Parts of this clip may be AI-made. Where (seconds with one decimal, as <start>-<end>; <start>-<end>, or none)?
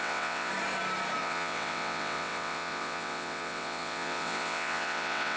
0.0-0.5; 1.2-5.4